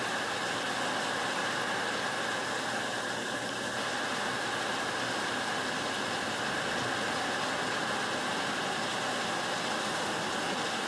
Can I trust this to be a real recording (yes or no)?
yes